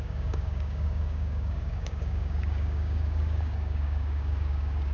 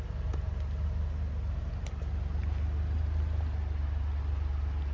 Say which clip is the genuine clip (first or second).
second